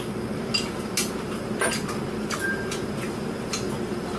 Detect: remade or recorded recorded